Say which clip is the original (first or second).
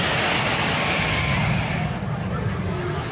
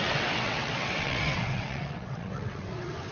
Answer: first